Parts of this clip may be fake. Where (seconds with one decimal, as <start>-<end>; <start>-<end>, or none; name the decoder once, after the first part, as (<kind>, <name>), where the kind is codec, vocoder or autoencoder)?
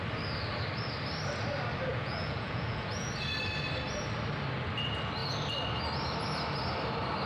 1.9-3.1 (vocoder, Vocos)